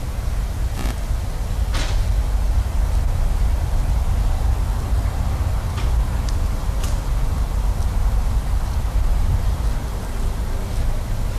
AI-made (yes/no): no